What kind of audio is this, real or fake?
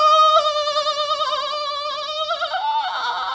real